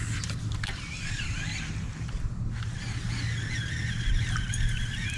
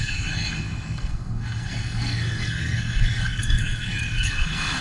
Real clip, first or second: first